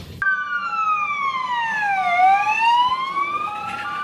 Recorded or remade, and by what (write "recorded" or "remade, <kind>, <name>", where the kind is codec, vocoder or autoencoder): recorded